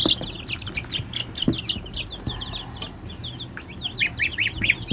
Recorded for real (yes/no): yes